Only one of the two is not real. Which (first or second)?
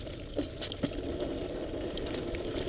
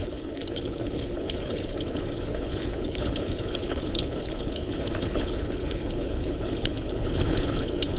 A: second